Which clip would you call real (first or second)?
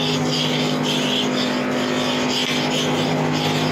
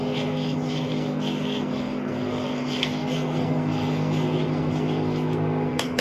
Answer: first